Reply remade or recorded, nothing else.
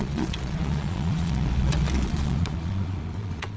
remade